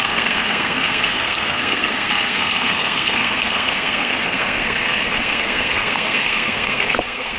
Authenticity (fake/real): fake